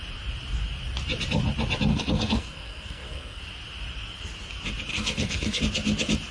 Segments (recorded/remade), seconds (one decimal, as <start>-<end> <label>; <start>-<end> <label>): 0.0-1.9 recorded; 1.9-3.4 remade; 3.4-4.9 recorded; 4.9-5.6 remade; 5.6-6.3 recorded